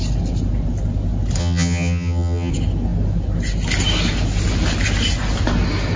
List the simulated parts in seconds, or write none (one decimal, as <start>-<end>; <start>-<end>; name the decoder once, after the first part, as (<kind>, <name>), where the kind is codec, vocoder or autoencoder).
1.4-2.5 (vocoder, HiFi-GAN)